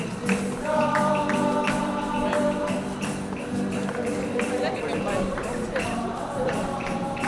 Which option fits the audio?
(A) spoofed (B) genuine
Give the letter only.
B